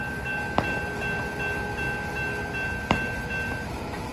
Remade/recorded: recorded